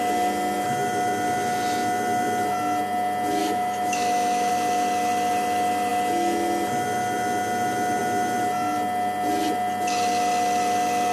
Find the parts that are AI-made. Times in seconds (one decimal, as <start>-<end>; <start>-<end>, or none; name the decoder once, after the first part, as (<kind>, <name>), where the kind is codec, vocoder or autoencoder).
3.4-4.5 (autoencoder, DAC-VAE)